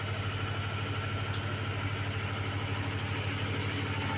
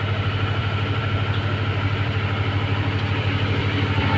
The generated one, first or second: second